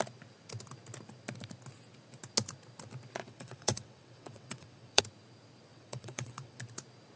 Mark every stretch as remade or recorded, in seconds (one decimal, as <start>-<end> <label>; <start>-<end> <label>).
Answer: 0.0-3.2 recorded; 3.2-5.0 remade; 5.0-5.7 recorded; 5.7-6.6 remade; 6.6-7.2 recorded